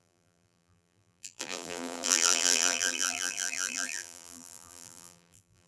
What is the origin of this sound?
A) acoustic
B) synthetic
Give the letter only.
B